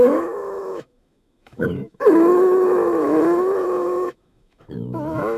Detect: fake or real fake